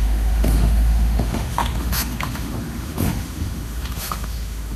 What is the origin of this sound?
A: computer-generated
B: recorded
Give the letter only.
A